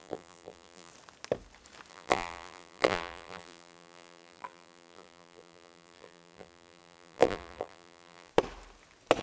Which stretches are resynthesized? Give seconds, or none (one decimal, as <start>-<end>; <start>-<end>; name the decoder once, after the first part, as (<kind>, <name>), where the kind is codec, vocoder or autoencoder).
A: 0.0-0.9 (vocoder, BigVGAN v2); 1.9-8.3